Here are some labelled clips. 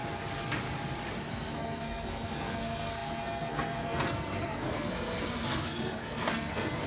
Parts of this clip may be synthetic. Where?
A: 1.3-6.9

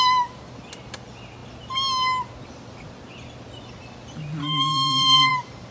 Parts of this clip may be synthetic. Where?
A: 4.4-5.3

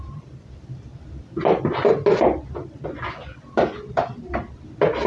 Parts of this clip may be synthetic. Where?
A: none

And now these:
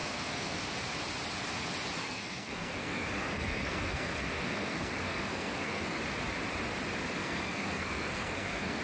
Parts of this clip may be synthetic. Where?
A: 0.0-0.6; 2.0-6.0; 7.2-8.8

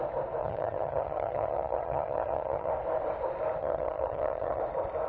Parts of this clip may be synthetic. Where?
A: 0.4-2.7; 3.6-4.6

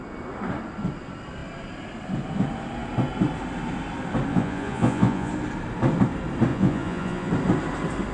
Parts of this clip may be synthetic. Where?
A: 4.3-5.3; 6.5-7.3